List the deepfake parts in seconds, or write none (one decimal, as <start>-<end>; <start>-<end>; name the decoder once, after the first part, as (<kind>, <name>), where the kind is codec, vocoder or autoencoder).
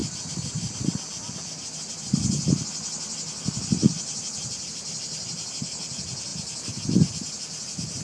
0.0-0.9 (vocoder, BigVGAN v2); 3.8-5.0